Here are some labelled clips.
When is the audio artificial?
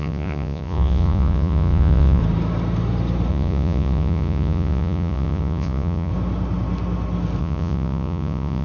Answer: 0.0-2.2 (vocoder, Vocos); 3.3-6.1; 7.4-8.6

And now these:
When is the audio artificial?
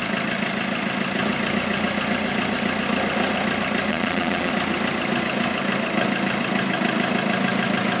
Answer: 3.9-4.5 (vocoder, Vocos)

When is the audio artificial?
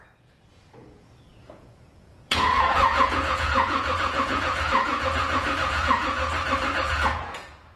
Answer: 0.0-6.3 (vocoder, Vocos); 6.9-7.8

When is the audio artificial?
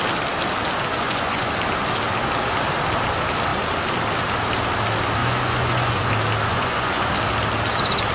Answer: 0.9-1.5 (vocoder, Vocos); 5.2-6.1; 6.5-7.1